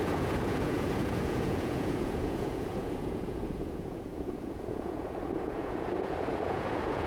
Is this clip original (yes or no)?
no